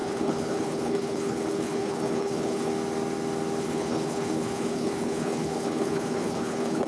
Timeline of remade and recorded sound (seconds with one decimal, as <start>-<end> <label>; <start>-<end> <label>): 0.0-2.7 remade; 2.7-3.6 recorded; 3.6-6.9 remade